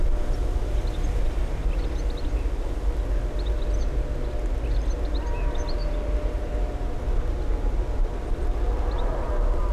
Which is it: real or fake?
real